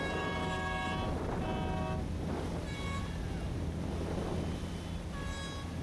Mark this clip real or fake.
real